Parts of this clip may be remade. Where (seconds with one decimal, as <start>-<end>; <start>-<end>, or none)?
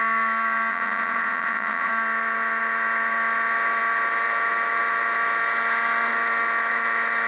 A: 0.7-1.9